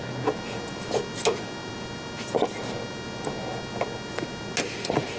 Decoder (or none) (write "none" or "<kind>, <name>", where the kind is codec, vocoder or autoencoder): none